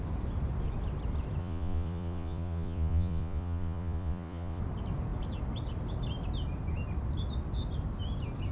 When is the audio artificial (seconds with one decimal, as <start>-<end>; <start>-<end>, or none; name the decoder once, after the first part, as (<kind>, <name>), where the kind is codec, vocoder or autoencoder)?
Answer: 1.4-4.6 (vocoder, Vocos)